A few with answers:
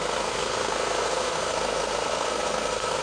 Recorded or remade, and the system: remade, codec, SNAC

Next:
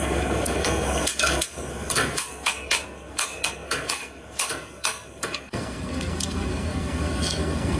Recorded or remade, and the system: remade, codec, SNAC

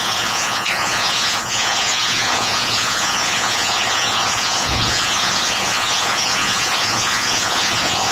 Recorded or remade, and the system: remade, vocoder, Vocos